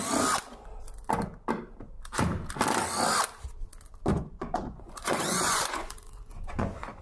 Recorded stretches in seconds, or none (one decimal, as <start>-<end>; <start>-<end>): 0.0-4.1